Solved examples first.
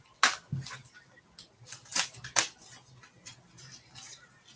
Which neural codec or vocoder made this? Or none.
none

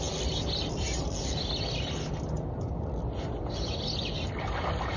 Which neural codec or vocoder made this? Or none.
none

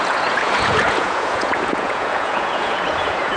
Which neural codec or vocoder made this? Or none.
vocoder, Vocos